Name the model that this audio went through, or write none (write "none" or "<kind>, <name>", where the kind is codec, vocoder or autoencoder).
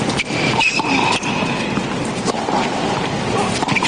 none